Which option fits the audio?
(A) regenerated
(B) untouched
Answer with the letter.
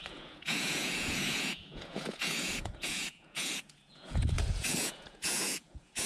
A